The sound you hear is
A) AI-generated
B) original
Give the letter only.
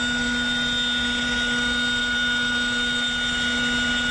B